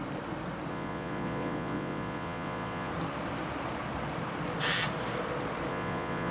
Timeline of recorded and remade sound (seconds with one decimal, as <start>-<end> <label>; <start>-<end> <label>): 0.0-0.7 recorded; 0.7-2.9 remade; 2.9-5.7 recorded; 5.7-6.3 remade